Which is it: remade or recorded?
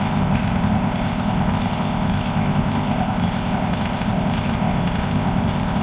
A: remade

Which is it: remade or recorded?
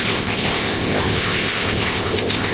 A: remade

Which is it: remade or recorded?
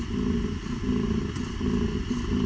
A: recorded